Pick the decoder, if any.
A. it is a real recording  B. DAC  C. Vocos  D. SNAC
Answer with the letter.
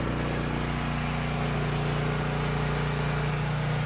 A